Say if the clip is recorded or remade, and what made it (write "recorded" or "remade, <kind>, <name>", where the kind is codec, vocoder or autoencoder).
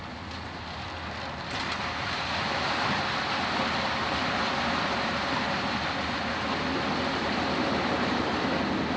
recorded